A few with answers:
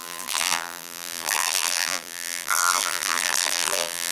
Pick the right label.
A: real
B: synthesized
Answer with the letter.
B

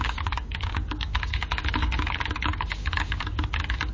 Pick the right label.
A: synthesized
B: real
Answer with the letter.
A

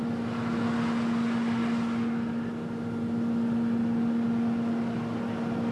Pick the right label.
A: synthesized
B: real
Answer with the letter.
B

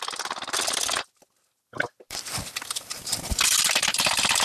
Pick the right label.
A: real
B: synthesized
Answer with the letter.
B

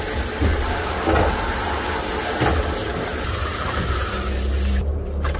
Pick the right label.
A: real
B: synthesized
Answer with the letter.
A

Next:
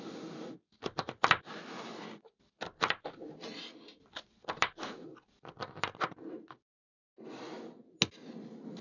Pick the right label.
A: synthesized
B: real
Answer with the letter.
B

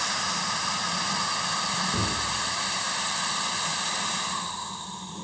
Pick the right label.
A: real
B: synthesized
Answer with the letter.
A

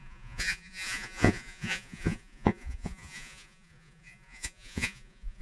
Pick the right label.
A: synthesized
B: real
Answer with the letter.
A